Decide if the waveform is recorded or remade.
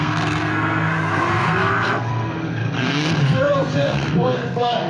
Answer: remade